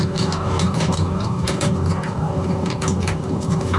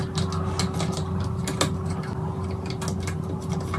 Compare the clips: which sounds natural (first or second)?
second